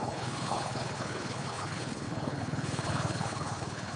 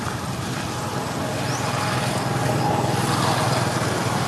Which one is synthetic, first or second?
first